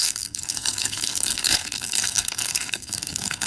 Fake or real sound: fake